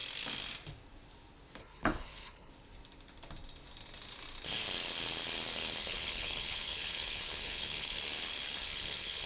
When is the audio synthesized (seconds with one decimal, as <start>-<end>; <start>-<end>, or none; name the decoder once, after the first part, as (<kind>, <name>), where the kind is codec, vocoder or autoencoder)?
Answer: 1.6-2.5 (codec, HILCodec); 5.8-8.0; 8.6-9.3